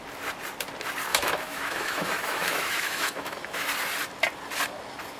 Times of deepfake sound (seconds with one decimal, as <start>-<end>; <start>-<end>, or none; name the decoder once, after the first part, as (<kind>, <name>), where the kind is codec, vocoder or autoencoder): 1.1-3.7 (autoencoder, DAC-VAE)